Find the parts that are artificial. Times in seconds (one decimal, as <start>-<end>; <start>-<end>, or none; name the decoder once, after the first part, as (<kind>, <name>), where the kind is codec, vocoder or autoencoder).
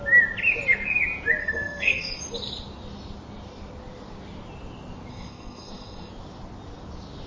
1.4-2.2 (codec, SNAC); 5.1-6.1